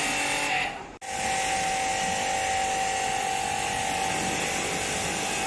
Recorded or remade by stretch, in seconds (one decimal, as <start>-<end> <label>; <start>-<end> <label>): 0.0-5.5 recorded